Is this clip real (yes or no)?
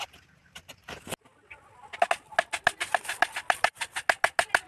yes